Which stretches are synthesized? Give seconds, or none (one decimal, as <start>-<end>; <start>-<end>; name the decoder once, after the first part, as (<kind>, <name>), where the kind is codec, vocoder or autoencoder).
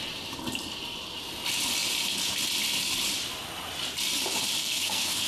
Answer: 4.6-5.3 (codec, SNAC)